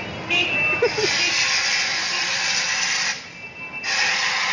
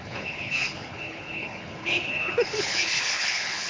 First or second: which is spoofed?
second